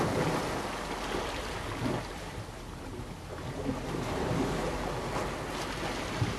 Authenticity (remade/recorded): recorded